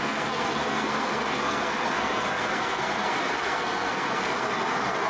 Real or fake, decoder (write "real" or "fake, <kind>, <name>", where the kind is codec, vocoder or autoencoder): fake, codec, SNAC